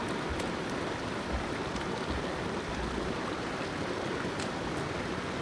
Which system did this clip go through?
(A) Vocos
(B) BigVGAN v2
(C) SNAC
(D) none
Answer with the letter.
D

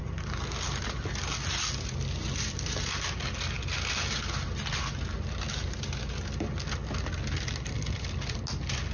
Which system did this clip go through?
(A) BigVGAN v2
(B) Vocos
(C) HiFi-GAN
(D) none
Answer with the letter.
D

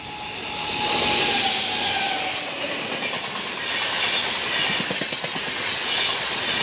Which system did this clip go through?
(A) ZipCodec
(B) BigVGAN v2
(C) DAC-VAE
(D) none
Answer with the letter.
D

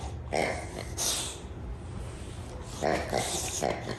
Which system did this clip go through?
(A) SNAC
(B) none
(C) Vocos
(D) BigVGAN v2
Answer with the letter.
B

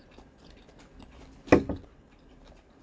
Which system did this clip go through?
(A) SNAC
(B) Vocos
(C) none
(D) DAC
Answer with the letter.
C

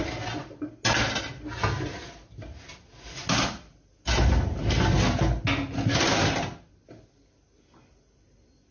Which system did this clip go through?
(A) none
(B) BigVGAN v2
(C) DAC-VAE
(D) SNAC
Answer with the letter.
A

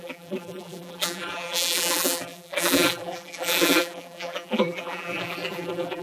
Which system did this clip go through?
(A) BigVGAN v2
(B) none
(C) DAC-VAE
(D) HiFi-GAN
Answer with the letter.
A